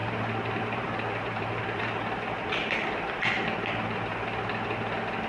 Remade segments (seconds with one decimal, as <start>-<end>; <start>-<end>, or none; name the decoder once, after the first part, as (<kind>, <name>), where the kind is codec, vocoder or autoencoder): 0.0-3.2 (vocoder, BigVGAN v2)